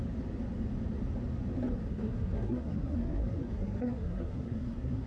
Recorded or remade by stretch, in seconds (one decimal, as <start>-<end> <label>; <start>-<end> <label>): 0.0-1.9 recorded; 1.9-5.1 remade